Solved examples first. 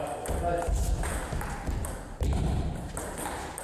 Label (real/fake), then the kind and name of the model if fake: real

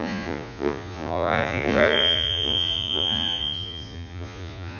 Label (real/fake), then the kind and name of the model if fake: fake, vocoder, Vocos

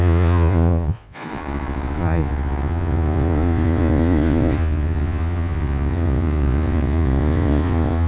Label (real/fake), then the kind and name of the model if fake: fake, vocoder, Vocos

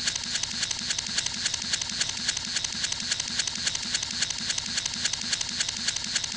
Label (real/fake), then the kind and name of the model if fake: real